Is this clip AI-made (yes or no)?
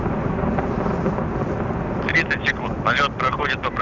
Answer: no